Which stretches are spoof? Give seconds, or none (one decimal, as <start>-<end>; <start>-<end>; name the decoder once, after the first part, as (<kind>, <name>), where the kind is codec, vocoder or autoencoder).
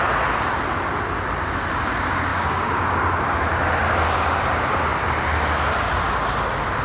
2.3-3.0 (codec, DAC)